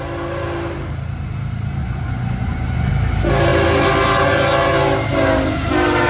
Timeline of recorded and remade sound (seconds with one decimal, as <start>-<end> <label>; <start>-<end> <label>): 0.0-1.8 recorded; 1.8-2.9 remade; 2.9-6.1 recorded

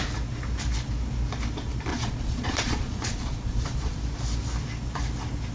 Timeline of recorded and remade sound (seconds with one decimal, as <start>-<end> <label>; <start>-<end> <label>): 0.0-1.9 recorded; 1.9-4.0 remade; 4.0-5.5 recorded

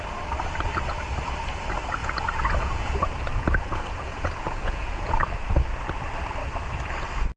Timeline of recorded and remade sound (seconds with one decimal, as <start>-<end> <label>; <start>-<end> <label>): 0.0-2.0 recorded; 2.0-5.1 remade; 5.1-7.4 recorded

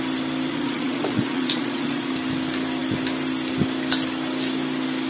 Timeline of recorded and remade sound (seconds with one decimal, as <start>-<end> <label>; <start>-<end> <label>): 0.0-0.5 recorded; 0.5-2.1 remade; 2.1-5.1 recorded

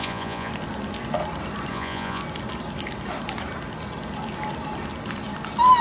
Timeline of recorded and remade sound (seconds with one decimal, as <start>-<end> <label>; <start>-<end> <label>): 0.0-0.5 remade; 0.5-1.7 recorded; 1.7-2.2 remade; 2.2-5.8 recorded